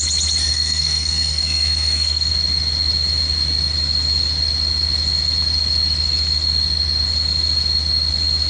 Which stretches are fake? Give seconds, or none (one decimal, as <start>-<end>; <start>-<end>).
0.5-2.3

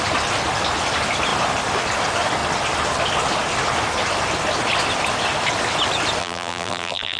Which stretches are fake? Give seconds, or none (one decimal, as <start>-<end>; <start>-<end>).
6.2-7.2

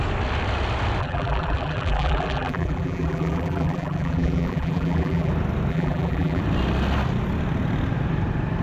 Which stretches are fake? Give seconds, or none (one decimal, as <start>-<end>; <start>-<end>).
1.0-5.3; 5.7-6.4

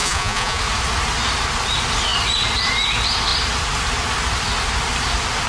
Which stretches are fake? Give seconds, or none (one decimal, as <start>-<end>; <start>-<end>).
0.0-0.6

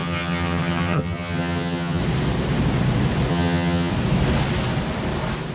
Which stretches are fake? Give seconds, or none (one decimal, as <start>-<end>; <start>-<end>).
0.0-2.0; 3.3-3.9

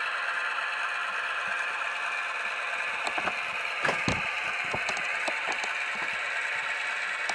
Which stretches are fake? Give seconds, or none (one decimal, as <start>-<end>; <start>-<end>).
none

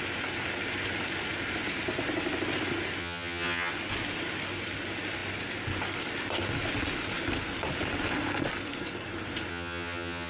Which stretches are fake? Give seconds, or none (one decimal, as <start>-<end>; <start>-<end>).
3.0-3.7; 9.5-10.3